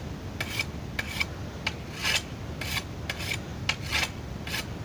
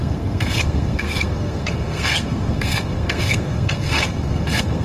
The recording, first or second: first